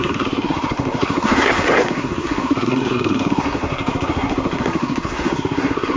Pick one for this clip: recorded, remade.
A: remade